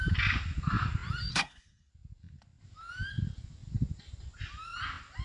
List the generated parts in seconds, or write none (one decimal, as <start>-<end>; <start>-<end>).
1.3-1.9